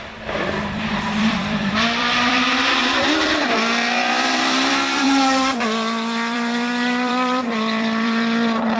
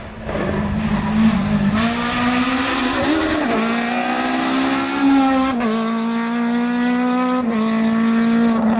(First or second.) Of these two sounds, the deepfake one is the first